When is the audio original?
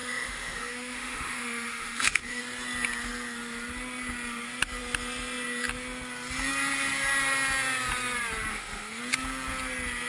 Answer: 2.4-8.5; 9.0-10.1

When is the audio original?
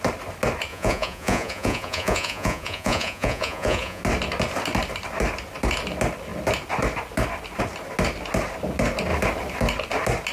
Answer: 0.0-0.7; 4.0-10.3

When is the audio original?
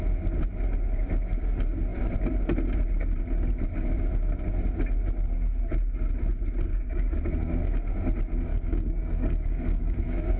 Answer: 0.0-6.7; 7.2-8.5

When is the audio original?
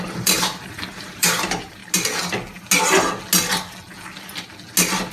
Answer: 1.8-5.1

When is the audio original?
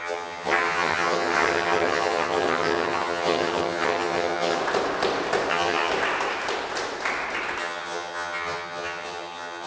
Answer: 4.6-5.5; 5.9-7.6